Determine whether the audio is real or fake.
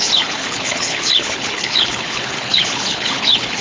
fake